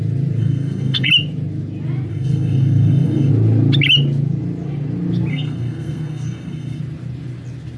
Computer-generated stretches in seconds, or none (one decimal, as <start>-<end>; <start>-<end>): 0.4-1.1; 2.1-3.3; 5.3-6.8